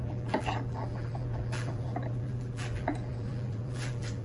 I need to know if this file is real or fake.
fake